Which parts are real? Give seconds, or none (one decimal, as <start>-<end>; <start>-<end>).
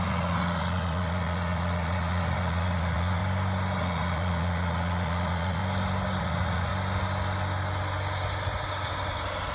3.2-3.8; 5.6-6.2; 6.7-9.5